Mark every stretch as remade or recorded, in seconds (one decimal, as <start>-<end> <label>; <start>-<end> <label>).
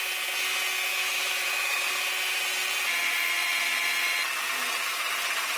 0.0-0.9 recorded; 0.9-1.9 remade; 1.9-5.6 recorded